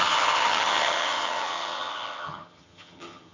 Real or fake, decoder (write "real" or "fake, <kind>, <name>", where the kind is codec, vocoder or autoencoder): fake, vocoder, HiFi-GAN